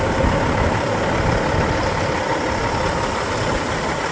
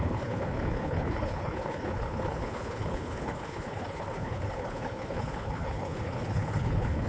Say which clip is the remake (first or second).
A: second